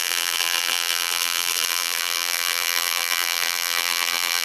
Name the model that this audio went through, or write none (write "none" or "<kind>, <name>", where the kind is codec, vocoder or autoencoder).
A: vocoder, BigVGAN v2